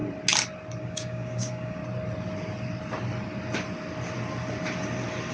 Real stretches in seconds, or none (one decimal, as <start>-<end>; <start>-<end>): 0.0-0.8; 1.8-5.3